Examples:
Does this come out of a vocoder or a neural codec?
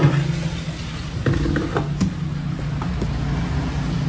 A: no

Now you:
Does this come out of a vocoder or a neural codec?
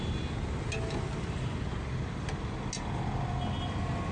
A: no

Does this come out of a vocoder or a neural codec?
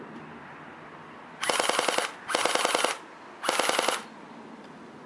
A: no